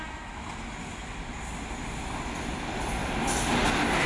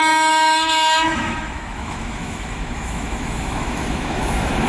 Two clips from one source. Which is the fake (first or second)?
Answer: second